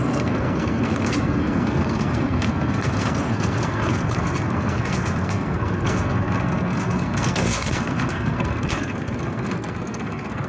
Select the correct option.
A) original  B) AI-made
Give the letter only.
B